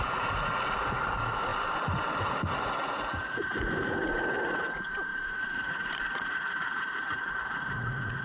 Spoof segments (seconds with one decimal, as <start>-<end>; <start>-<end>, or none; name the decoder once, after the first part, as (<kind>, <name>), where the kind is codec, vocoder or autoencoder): 0.0-1.5 (vocoder, Vocos); 2.2-8.2